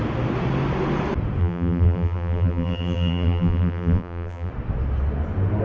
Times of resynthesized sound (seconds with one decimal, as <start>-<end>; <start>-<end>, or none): 1.4-4.5